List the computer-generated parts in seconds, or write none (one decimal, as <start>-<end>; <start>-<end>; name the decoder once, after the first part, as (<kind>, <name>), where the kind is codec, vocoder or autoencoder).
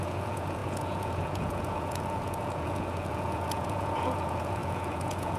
0.0-5.4 (vocoder, Vocos)